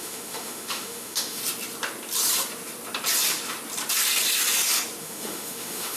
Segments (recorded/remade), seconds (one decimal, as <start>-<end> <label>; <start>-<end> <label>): 0.0-1.4 remade; 1.4-5.0 recorded; 5.0-6.0 remade